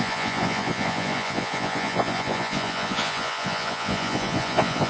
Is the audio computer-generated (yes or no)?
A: yes